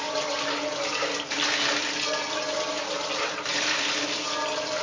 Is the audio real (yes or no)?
yes